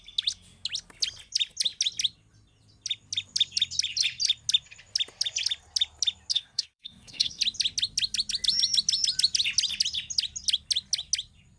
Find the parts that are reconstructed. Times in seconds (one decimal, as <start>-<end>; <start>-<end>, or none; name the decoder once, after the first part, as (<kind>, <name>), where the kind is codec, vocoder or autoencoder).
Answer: 6.3-7.4 (codec, SNAC)